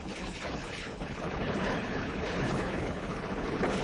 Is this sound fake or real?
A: fake